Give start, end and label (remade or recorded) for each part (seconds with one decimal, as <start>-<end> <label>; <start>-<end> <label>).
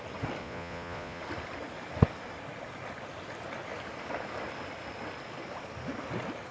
0.0-0.4 recorded; 0.4-1.2 remade; 1.2-6.5 recorded